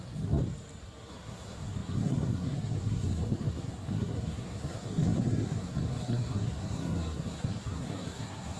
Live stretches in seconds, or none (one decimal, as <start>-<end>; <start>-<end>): 0.4-1.1

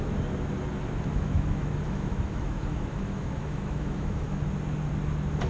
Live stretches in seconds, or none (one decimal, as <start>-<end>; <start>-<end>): 0.0-1.1; 4.4-5.5

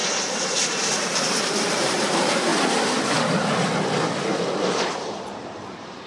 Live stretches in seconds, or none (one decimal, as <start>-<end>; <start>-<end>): 0.0-0.8; 2.5-4.7

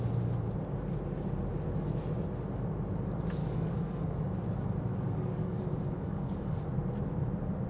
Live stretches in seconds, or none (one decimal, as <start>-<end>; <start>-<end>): 0.0-3.4; 4.2-4.9; 6.6-7.7

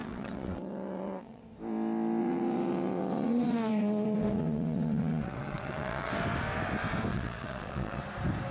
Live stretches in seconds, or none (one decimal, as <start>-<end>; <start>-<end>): 1.4-2.2; 6.1-7.1; 8.0-8.5

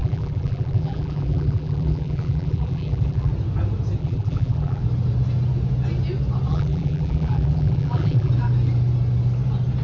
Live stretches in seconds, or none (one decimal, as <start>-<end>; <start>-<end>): 3.3-4.0; 4.8-6.5; 8.3-9.8

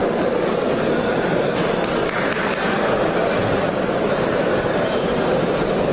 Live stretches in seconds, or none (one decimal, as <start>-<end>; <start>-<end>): 0.0-5.9